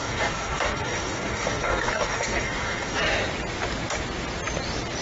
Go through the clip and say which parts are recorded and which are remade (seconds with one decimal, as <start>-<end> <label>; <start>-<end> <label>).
0.0-3.0 remade; 3.0-5.0 recorded